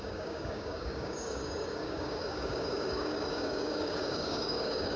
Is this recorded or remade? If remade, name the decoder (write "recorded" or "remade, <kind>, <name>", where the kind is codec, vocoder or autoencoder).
remade, codec, DAC